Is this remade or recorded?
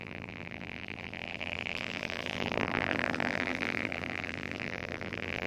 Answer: remade